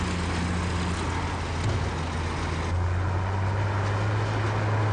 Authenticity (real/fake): real